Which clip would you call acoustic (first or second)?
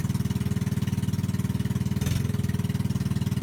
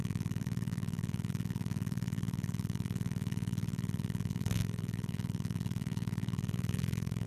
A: first